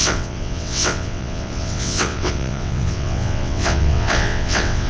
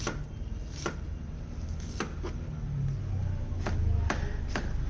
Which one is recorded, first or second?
second